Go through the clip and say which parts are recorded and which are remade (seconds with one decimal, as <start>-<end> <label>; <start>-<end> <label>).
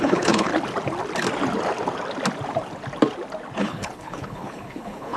0.0-0.5 remade; 0.5-3.6 recorded; 3.6-5.2 remade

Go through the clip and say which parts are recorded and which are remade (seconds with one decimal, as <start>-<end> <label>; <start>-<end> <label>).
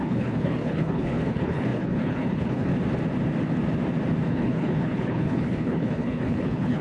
0.0-2.7 remade; 2.7-4.3 recorded; 4.3-6.8 remade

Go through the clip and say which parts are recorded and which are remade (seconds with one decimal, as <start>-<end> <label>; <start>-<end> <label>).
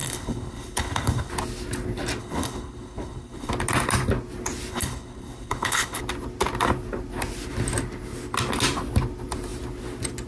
0.0-1.3 remade; 1.3-2.2 recorded; 2.2-3.5 remade; 3.5-4.7 recorded; 4.7-6.0 remade; 6.0-10.3 recorded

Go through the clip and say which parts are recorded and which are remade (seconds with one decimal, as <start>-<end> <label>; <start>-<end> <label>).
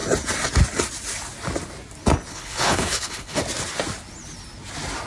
0.0-2.3 recorded; 2.3-3.4 remade; 3.4-5.1 recorded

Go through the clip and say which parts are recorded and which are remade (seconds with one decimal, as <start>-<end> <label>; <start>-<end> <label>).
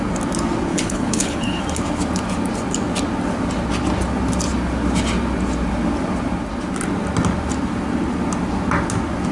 0.0-0.7 recorded; 0.7-1.6 remade; 1.6-9.3 recorded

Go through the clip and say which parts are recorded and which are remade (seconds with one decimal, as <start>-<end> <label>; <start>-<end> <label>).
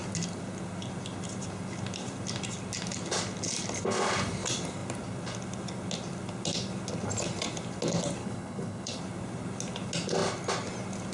0.0-8.2 recorded; 8.2-9.0 remade; 9.0-11.1 recorded